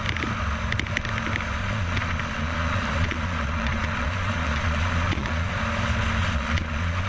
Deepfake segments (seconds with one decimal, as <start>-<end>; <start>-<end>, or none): 1.6-5.6; 6.2-7.1